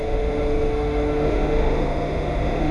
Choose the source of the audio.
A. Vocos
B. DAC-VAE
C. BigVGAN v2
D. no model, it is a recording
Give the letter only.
B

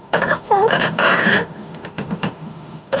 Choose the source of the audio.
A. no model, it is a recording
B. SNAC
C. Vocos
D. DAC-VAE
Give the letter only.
D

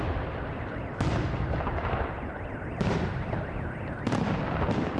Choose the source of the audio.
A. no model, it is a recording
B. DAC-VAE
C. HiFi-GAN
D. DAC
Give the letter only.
A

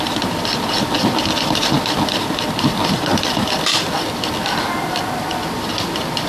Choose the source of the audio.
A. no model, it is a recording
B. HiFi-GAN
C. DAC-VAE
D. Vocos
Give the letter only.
A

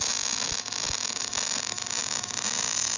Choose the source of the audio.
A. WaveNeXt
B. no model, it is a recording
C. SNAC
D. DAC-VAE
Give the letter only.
B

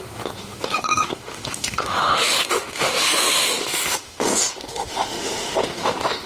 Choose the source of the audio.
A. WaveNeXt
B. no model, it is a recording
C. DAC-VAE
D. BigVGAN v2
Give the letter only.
C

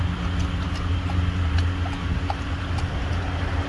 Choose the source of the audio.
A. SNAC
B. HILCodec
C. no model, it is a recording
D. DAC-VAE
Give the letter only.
C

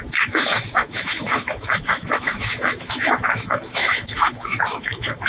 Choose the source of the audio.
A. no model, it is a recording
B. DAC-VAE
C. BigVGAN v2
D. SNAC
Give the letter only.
B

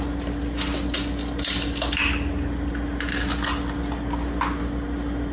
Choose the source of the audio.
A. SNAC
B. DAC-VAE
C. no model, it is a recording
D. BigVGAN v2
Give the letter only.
C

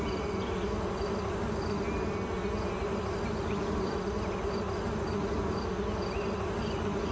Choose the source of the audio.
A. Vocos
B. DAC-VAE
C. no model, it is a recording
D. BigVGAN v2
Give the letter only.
C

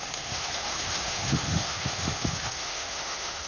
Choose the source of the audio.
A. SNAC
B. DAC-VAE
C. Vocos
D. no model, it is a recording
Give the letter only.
B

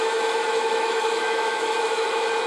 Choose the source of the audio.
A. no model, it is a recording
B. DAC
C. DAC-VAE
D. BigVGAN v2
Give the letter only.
C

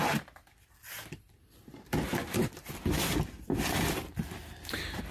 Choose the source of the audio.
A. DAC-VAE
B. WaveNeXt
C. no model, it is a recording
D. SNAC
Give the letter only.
C